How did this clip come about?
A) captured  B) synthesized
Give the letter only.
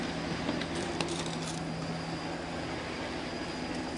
A